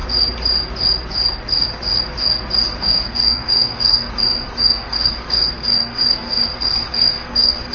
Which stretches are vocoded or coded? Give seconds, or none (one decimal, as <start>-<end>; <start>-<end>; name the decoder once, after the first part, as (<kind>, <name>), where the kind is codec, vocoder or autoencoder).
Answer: 2.8-7.7 (codec, SNAC)